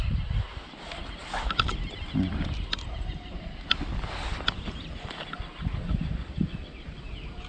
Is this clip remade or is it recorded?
recorded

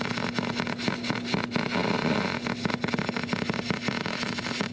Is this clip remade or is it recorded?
recorded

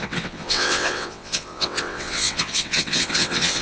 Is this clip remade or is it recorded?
remade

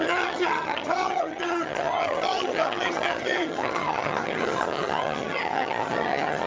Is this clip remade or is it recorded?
remade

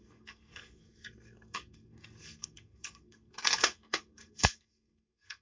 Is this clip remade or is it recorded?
remade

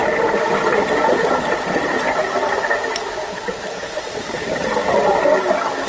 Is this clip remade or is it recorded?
recorded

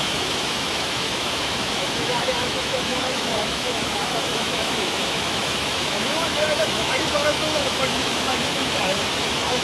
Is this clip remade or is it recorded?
remade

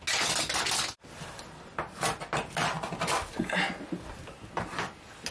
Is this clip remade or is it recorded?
recorded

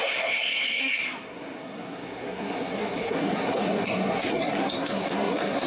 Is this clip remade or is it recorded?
remade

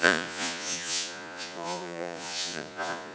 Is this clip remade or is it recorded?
remade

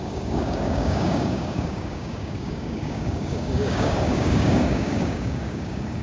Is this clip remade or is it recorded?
remade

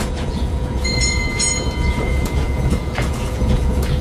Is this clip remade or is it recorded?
remade